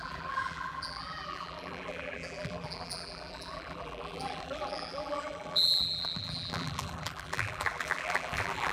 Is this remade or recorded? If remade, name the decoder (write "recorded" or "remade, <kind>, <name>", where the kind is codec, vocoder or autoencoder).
remade, vocoder, BigVGAN v2